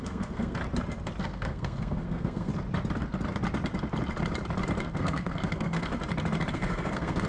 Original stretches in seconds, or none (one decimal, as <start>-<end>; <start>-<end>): 0.6-1.2; 2.5-4.8; 5.9-6.5